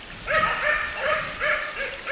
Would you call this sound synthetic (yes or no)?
no